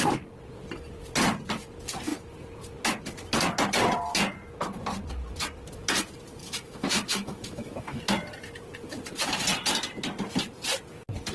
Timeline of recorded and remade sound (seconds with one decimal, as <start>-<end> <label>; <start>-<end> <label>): 0.0-6.4 recorded; 6.4-8.0 remade; 8.0-11.3 recorded